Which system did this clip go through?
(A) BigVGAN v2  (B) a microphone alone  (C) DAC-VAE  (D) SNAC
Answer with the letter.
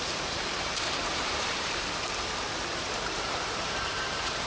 A